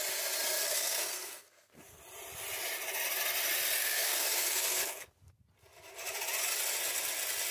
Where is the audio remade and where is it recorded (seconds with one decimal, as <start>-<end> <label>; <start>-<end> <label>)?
0.0-0.6 recorded; 0.6-2.0 remade; 2.0-3.8 recorded; 3.8-5.1 remade; 5.1-7.5 recorded